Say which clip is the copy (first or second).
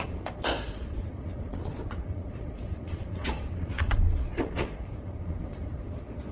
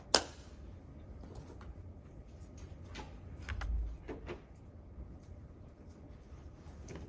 first